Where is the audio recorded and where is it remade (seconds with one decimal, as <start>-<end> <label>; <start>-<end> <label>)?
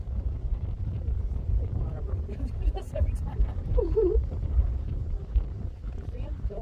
0.0-5.0 remade; 5.0-5.9 recorded; 5.9-6.6 remade